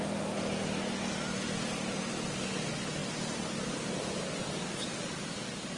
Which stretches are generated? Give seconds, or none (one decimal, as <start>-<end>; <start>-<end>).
none